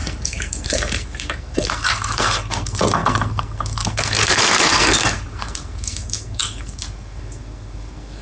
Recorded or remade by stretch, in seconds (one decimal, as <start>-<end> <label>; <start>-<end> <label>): 0.0-8.2 remade